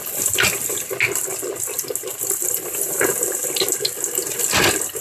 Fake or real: real